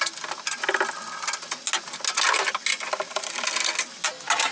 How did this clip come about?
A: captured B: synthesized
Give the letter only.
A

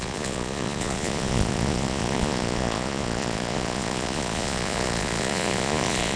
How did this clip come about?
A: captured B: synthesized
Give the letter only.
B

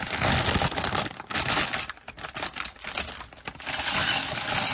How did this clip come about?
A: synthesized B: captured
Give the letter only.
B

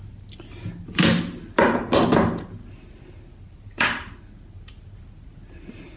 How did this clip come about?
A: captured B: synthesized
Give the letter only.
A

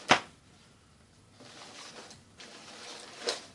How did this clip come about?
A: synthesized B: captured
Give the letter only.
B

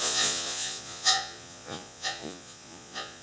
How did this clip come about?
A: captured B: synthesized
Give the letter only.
B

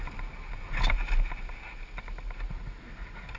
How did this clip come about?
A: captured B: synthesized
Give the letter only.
A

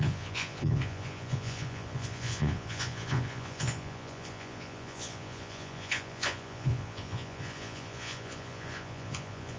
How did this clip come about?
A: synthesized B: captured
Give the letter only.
A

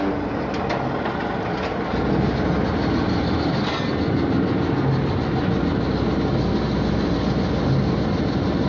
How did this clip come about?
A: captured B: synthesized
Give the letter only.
A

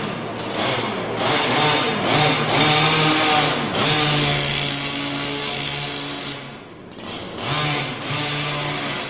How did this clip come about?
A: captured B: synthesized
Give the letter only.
A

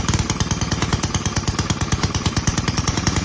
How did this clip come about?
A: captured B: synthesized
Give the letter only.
A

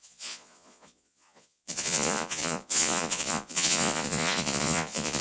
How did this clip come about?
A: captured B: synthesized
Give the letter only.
B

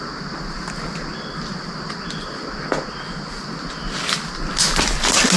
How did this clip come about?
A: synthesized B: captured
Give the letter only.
B